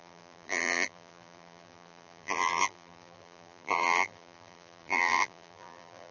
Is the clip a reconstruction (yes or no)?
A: yes